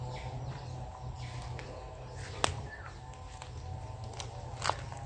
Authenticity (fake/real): real